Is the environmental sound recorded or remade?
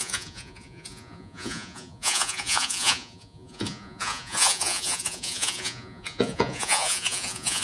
remade